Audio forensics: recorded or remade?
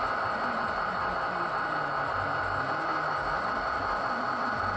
recorded